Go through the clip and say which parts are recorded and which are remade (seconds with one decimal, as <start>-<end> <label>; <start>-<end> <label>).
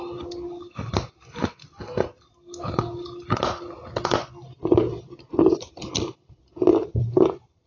0.0-6.7 recorded; 6.7-7.7 remade